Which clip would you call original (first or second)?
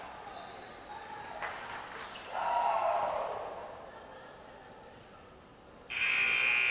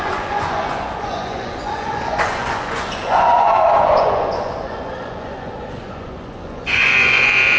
first